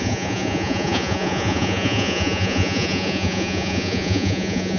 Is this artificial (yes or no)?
yes